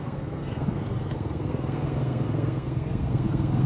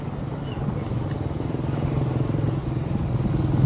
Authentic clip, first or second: second